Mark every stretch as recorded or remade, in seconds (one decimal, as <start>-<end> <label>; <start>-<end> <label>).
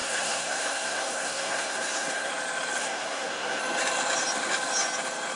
0.0-2.3 remade; 2.3-2.8 recorded; 2.8-3.6 remade; 3.6-5.4 recorded